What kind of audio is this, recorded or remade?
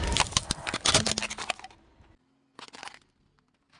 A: recorded